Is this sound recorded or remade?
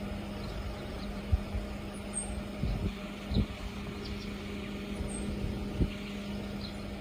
recorded